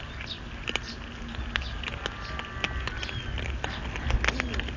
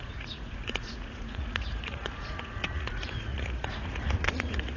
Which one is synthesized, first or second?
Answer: second